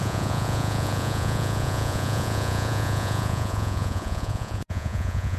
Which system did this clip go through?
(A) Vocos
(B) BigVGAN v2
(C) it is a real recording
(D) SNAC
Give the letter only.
A